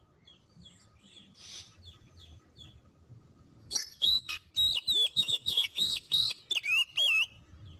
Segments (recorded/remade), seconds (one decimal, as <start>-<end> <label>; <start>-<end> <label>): 0.0-3.6 recorded; 3.6-4.5 remade; 4.5-5.1 recorded; 5.1-6.4 remade; 6.4-7.8 recorded